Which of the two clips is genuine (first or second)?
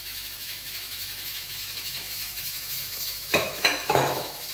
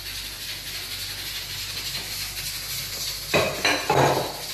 second